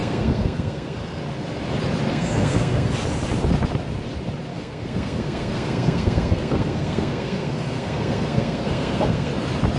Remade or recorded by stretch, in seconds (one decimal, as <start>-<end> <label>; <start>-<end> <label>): 0.0-1.2 remade; 1.2-2.1 recorded; 2.1-2.9 remade; 2.9-4.5 recorded; 4.5-9.3 remade; 9.3-9.8 recorded